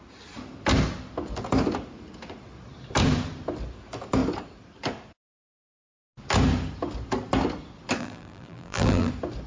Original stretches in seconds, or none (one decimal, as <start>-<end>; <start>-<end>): 0.0-8.0; 9.1-9.5